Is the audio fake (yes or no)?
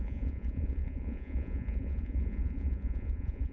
yes